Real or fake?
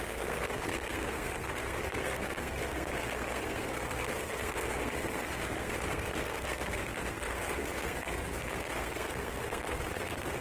fake